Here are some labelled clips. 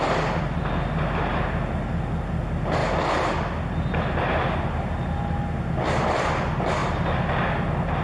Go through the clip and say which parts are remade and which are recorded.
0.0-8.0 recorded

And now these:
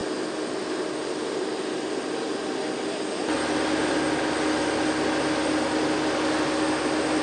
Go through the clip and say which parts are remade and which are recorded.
0.0-7.2 recorded